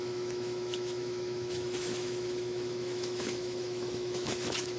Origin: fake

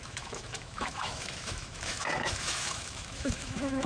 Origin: fake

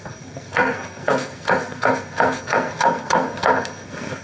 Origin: fake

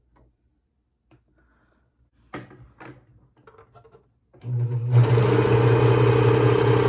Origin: real